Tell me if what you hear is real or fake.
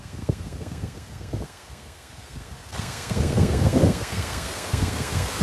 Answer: fake